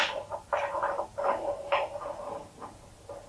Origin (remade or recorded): recorded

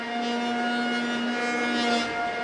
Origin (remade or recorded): recorded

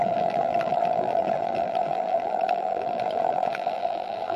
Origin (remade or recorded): remade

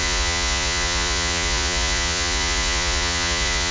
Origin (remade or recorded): remade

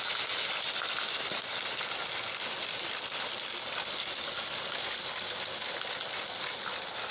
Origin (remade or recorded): recorded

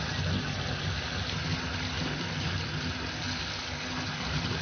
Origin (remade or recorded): recorded